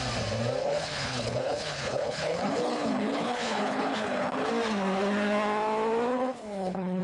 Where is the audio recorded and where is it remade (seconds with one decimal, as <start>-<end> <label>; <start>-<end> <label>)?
0.0-0.6 recorded; 0.6-4.5 remade; 4.5-6.1 recorded; 6.1-7.0 remade